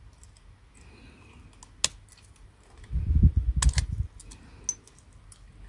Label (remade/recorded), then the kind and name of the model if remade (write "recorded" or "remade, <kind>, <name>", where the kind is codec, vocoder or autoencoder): recorded